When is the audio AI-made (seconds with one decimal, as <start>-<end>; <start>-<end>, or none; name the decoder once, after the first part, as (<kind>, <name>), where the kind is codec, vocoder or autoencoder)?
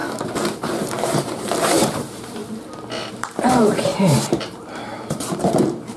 0.6-2.4 (vocoder, BigVGAN v2); 3.1-6.0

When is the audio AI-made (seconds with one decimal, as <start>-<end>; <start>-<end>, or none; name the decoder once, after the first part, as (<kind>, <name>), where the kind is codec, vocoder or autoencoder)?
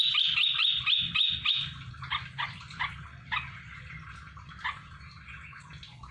0.4-1.0 (vocoder, BigVGAN v2); 1.6-3.9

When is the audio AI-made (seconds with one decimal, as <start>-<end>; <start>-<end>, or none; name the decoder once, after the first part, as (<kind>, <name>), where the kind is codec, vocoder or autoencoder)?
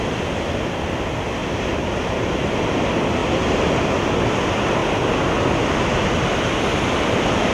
1.4-2.4 (vocoder, BigVGAN v2); 3.2-4.1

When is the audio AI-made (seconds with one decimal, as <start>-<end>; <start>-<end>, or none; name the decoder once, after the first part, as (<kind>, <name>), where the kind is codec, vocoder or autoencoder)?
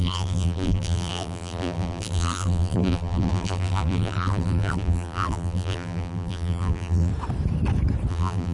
0.0-7.1 (vocoder, BigVGAN v2); 8.1-8.5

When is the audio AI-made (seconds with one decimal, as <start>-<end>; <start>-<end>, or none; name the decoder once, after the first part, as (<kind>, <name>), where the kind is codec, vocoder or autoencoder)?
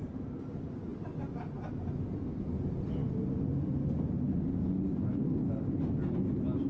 0.0-0.9 (vocoder, BigVGAN v2); 2.3-3.0; 5.3-6.7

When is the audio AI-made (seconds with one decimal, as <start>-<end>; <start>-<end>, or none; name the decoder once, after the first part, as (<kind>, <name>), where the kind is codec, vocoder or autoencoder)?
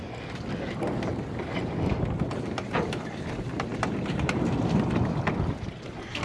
1.6-3.3 (vocoder, BigVGAN v2); 3.7-5.8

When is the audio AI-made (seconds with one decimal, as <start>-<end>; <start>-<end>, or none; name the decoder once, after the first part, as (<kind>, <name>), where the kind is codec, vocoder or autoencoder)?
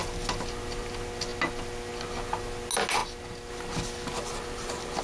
none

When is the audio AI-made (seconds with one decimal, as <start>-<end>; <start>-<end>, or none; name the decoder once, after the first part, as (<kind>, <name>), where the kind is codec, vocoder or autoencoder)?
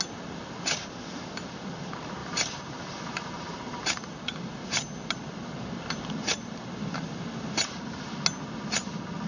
2.2-4.5 (vocoder, BigVGAN v2); 6.2-7.7